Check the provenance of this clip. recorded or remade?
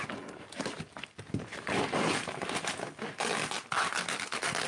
recorded